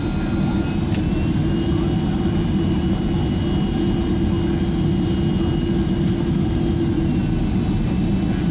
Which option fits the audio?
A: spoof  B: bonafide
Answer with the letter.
B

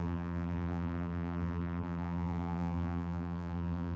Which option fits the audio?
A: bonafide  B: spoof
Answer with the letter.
B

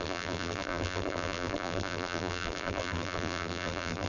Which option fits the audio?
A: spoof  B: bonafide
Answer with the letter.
A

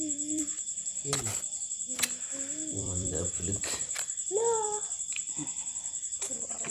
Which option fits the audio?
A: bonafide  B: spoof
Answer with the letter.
B